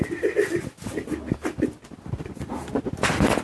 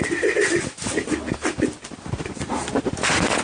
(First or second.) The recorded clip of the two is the first